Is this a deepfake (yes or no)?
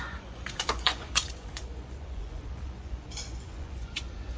yes